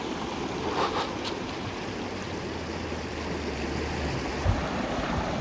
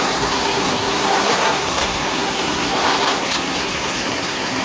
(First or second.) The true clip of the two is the first